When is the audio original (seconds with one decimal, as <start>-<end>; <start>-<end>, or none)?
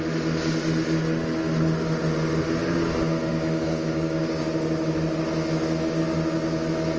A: 0.0-3.3; 4.4-7.0